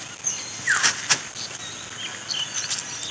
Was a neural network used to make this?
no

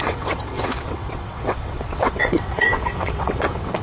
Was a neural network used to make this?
yes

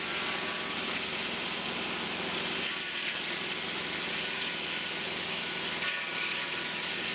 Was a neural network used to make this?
no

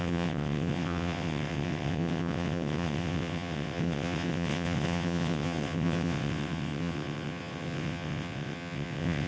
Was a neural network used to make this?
yes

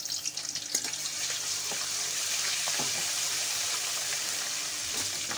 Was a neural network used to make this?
no